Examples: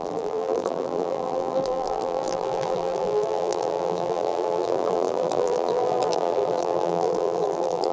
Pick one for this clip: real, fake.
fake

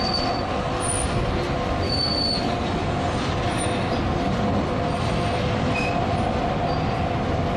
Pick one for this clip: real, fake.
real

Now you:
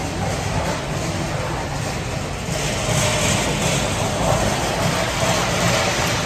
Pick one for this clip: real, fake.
real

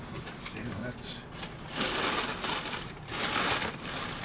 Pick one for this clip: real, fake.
fake